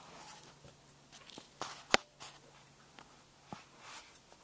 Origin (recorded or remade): recorded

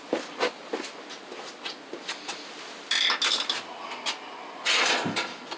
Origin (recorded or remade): recorded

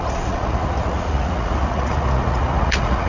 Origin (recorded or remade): remade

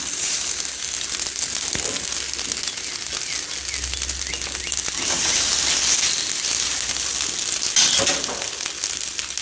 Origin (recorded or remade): recorded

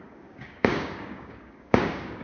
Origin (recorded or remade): remade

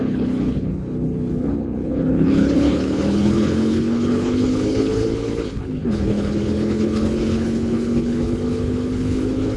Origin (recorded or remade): remade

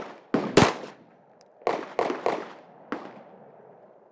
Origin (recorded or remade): recorded